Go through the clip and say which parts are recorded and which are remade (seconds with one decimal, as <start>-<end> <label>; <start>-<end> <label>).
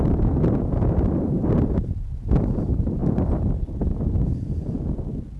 0.0-5.4 recorded